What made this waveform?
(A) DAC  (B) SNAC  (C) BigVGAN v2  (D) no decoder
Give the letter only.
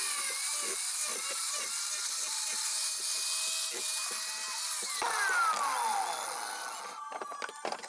D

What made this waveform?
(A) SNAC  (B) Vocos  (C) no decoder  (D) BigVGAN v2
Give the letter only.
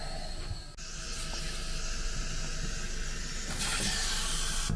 C